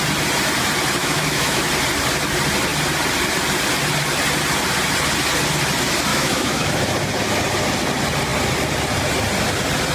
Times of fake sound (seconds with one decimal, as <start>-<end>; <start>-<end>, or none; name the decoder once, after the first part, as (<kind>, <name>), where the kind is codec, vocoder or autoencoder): 1.0-1.7 (autoencoder, DAC-VAE); 6.1-6.7